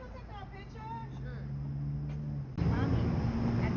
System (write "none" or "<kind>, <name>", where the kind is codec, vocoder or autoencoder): none